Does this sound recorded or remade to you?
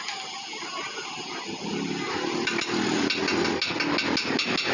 recorded